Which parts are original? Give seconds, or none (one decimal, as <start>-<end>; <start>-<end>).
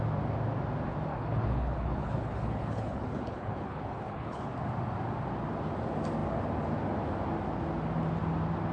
0.0-1.1; 4.5-8.7